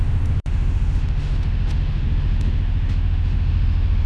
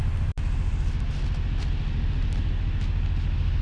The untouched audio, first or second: second